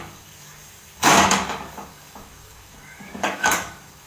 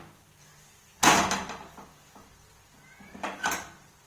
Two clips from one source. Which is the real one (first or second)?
second